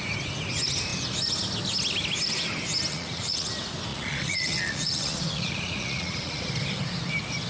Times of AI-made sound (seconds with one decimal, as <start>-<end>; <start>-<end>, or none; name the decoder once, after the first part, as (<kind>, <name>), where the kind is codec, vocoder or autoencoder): 2.9-3.5 (vocoder, Vocos); 3.9-6.5